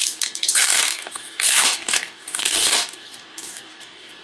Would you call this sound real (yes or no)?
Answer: no